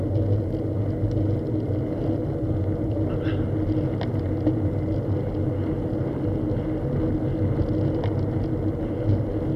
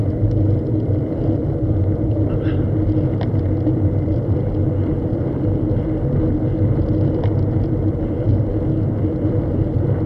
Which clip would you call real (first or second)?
first